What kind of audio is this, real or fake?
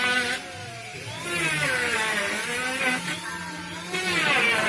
fake